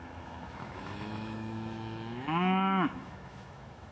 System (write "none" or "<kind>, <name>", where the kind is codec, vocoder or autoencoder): autoencoder, DAC-VAE